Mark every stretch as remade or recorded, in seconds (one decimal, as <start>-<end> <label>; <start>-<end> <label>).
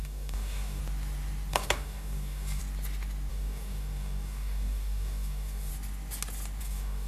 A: 0.0-0.8 remade; 0.8-1.5 recorded; 1.5-2.6 remade; 2.6-3.3 recorded; 3.3-5.7 remade; 5.7-6.6 recorded; 6.6-7.1 remade